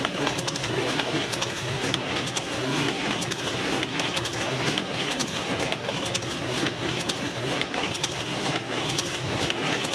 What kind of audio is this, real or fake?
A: fake